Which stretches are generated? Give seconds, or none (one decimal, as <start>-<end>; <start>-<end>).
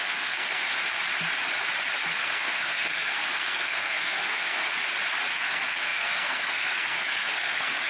0.0-0.8; 2.1-4.6; 5.3-7.9